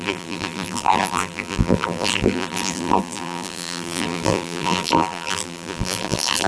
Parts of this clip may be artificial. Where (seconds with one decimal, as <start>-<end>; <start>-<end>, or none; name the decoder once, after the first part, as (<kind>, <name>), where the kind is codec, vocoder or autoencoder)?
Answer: 0.0-6.5 (vocoder, BigVGAN v2)